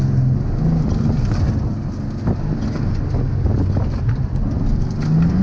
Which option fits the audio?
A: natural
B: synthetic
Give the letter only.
A